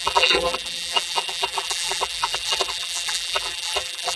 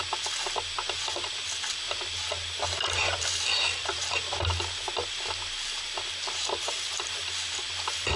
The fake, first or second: first